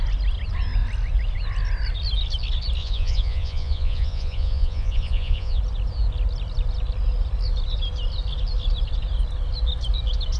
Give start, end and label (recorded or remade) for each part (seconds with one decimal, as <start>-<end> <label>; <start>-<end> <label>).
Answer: 0.0-2.8 recorded; 2.8-5.6 remade; 5.6-10.4 recorded